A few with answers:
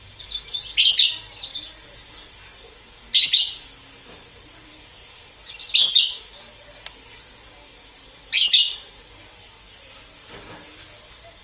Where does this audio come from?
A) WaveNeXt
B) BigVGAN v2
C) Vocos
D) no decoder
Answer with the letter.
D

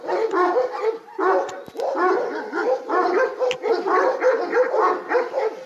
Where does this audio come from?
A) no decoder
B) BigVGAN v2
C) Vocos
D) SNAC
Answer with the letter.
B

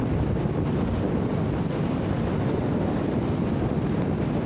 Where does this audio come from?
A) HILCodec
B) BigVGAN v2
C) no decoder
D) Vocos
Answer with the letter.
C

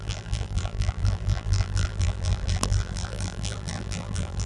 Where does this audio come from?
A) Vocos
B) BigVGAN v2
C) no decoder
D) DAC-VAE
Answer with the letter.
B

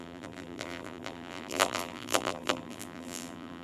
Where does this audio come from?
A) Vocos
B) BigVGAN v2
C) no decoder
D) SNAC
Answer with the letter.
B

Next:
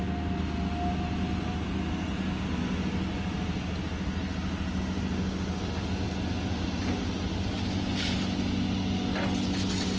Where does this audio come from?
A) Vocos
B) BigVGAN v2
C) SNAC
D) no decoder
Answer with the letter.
D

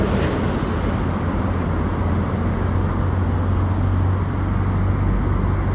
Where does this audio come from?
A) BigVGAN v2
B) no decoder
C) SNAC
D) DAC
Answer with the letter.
B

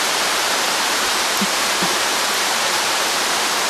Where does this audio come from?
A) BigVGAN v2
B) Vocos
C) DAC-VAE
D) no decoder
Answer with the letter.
A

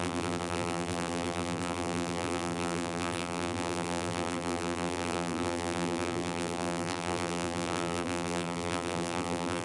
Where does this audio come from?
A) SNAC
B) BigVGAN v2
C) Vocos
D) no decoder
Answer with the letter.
B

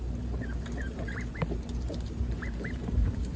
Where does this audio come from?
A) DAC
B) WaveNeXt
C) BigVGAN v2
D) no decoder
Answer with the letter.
C